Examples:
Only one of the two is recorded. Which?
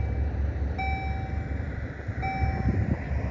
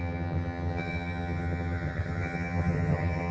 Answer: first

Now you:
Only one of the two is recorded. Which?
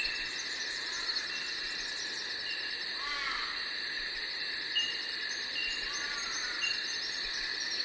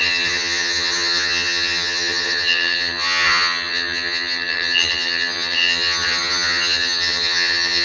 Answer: first